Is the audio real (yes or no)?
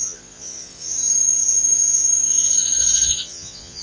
no